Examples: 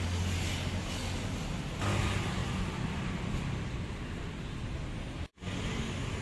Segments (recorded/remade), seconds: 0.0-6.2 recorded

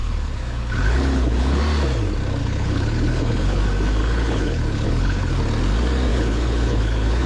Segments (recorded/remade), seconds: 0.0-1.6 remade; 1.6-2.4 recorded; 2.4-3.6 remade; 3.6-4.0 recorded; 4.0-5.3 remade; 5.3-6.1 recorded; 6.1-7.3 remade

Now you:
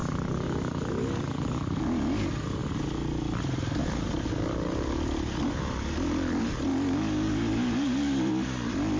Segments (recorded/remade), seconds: 0.0-1.8 remade; 1.8-6.7 recorded; 6.7-8.3 remade; 8.3-9.0 recorded

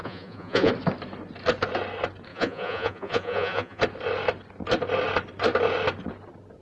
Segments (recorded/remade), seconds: 0.0-0.7 remade; 0.7-2.3 recorded; 2.3-3.8 remade; 3.8-6.6 recorded

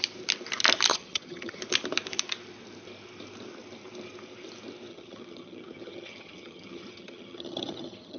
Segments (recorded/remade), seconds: 0.0-0.9 recorded; 0.9-1.6 remade; 1.6-4.9 recorded; 4.9-8.2 remade

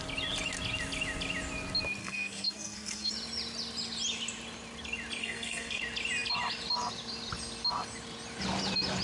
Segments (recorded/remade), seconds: 0.0-2.0 recorded; 2.0-3.1 remade; 3.1-5.2 recorded; 5.2-5.8 remade; 5.8-9.0 recorded

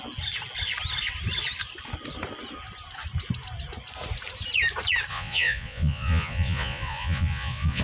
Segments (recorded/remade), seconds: 0.0-5.1 recorded; 5.1-7.8 remade